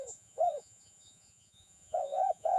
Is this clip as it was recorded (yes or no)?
no